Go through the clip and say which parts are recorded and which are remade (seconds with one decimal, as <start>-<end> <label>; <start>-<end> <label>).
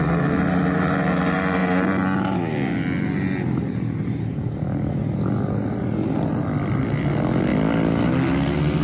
0.0-8.8 recorded